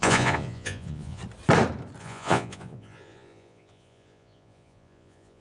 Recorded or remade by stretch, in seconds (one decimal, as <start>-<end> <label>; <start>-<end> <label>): 0.0-1.2 remade; 1.2-2.0 recorded; 2.0-5.4 remade